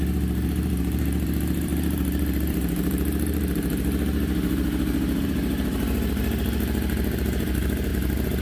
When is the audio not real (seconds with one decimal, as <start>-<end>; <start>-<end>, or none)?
0.0-7.9